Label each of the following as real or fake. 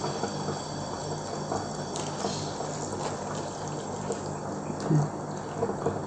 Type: real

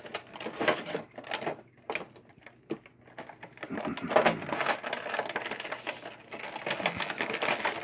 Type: real